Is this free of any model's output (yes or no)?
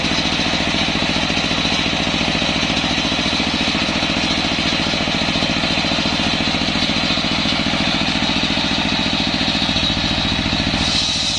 yes